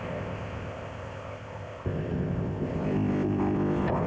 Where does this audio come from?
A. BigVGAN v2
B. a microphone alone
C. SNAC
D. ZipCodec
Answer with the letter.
D